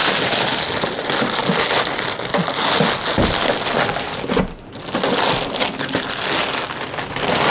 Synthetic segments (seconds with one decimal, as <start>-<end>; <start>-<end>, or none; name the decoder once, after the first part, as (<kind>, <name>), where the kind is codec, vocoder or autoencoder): none